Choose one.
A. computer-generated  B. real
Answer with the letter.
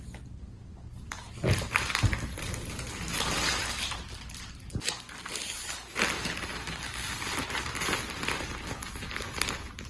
B